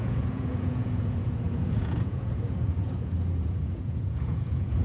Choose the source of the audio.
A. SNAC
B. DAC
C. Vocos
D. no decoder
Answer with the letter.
C